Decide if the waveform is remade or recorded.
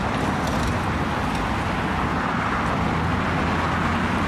recorded